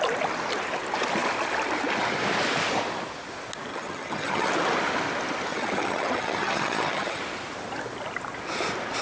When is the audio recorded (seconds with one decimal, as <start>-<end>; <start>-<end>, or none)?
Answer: 0.0-3.7; 4.5-5.5; 7.2-9.0